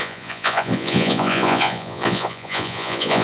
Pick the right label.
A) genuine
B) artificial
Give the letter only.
B